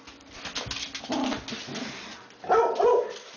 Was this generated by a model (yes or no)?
no